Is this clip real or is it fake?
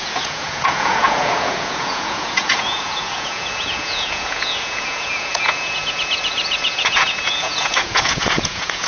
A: fake